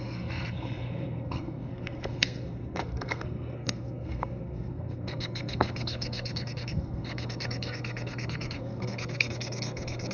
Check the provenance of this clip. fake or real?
fake